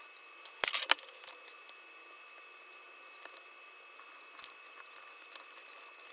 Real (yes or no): yes